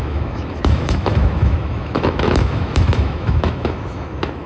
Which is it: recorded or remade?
remade